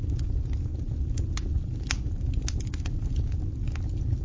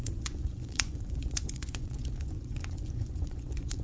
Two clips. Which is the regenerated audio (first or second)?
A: second